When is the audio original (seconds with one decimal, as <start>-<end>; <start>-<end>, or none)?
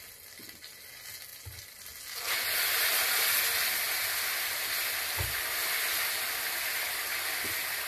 0.0-7.9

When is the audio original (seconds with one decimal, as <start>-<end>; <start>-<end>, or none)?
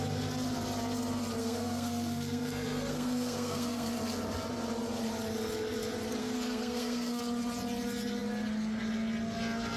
0.0-1.4; 3.9-6.2; 7.2-9.8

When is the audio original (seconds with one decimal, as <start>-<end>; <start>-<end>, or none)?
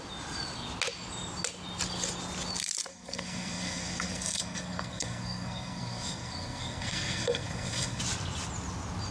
0.0-2.9; 8.0-9.1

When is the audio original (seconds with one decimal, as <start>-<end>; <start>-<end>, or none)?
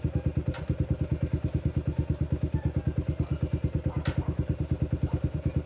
0.0-5.7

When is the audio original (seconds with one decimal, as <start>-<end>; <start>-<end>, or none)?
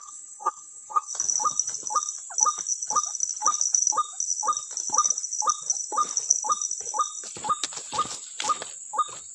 1.1-9.3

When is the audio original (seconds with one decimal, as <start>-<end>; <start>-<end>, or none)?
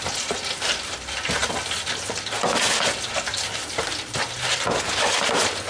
0.0-5.7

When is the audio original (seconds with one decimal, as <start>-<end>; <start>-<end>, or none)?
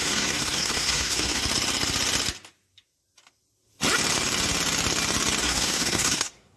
1.4-5.4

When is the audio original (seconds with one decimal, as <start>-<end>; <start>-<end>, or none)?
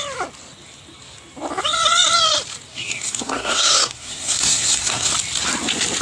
0.0-2.7; 5.1-6.0